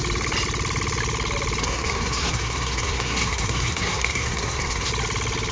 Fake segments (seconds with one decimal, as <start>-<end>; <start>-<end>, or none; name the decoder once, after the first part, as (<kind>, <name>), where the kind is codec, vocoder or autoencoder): 1.6-4.9 (codec, SNAC)